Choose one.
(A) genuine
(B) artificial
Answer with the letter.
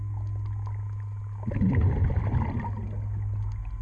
A